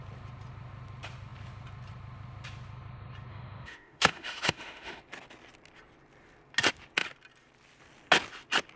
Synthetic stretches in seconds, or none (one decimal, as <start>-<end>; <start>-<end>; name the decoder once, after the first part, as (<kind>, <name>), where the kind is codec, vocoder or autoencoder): 3.3-5.0 (autoencoder, DAC-VAE)